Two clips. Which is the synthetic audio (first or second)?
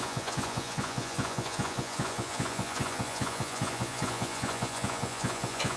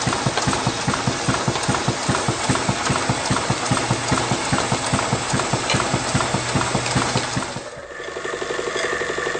first